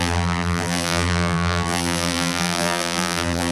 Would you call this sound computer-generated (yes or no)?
yes